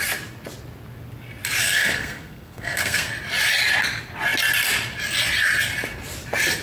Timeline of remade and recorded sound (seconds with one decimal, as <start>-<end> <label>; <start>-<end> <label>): 0.0-1.6 recorded; 1.6-3.1 remade; 3.1-6.6 recorded